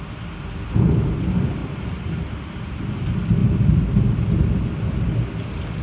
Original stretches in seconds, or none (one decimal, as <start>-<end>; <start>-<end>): 0.0-5.8